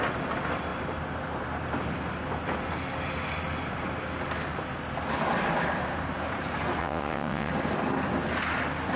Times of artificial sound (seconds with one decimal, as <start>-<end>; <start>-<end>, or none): 6.8-7.5